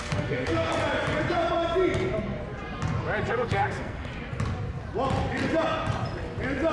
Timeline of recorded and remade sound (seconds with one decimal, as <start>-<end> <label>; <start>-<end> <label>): 0.0-0.7 remade; 0.7-3.3 recorded; 3.3-4.1 remade; 4.1-6.7 recorded